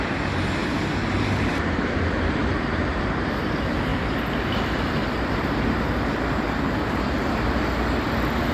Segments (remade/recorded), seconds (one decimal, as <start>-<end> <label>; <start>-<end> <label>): 0.0-0.6 recorded; 0.6-3.3 remade; 3.3-5.0 recorded; 5.0-6.0 remade; 6.0-8.5 recorded

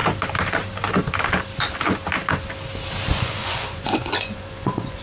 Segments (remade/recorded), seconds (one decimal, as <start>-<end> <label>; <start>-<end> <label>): 0.0-3.1 recorded; 3.1-5.0 remade

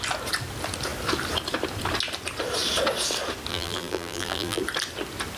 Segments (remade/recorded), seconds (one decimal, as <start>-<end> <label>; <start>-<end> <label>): 0.0-3.5 recorded; 3.5-4.6 remade; 4.6-5.4 recorded